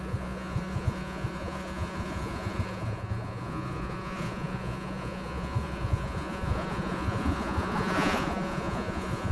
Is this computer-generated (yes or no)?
yes